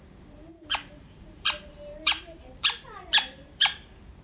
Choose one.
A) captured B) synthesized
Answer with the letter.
B